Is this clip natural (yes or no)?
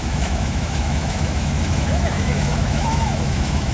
no